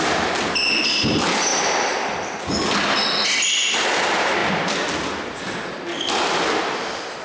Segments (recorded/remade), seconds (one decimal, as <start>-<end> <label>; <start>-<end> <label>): 0.0-7.2 recorded

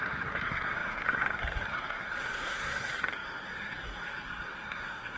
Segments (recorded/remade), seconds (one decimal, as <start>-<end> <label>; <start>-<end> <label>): 0.0-5.2 remade

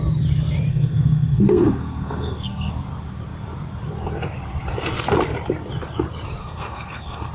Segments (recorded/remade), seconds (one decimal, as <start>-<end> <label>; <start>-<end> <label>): 0.0-0.7 recorded; 0.7-2.7 remade; 2.7-6.4 recorded; 6.4-7.3 remade

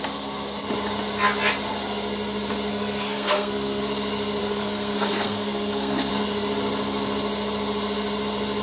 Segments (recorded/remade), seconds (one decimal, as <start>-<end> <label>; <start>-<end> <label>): 0.0-2.7 recorded; 2.7-3.8 remade; 3.8-4.4 recorded; 4.4-6.1 remade; 6.1-8.6 recorded

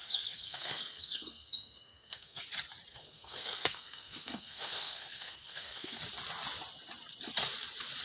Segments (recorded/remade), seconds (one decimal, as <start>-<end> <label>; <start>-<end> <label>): 0.0-2.4 remade; 2.4-2.9 recorded; 2.9-6.0 remade; 6.0-8.0 recorded

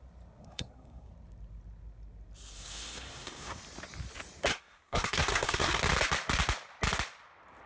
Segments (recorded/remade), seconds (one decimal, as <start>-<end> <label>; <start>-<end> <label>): 0.0-0.4 recorded; 0.4-1.1 remade; 1.1-2.5 recorded; 2.5-3.6 remade; 3.6-4.5 recorded; 4.5-5.8 remade; 5.8-7.7 recorded

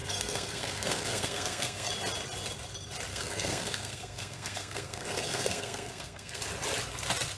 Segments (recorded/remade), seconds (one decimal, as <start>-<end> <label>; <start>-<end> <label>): 0.0-1.9 remade; 1.9-3.1 recorded; 3.1-6.4 remade; 6.4-7.4 recorded